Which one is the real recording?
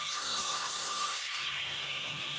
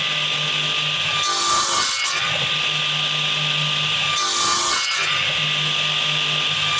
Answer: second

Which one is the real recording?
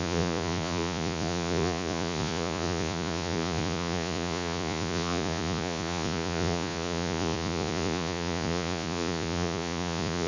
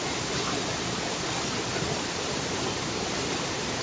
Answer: second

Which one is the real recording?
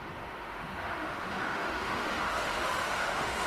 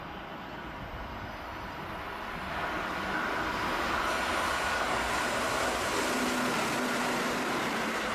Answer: second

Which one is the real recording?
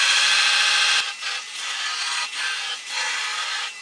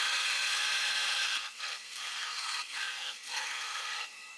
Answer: first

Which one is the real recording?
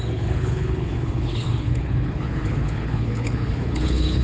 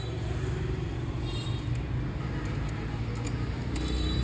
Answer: second